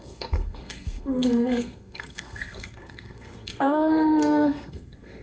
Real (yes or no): no